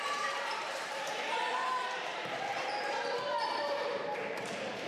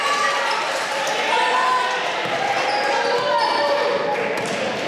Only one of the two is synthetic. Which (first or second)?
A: first